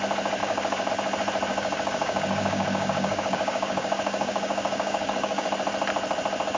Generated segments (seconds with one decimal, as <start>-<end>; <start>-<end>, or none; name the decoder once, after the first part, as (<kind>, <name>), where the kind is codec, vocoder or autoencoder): 0.4-0.9 (codec, DAC); 1.5-5.5